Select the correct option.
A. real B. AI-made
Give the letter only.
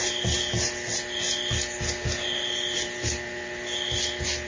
A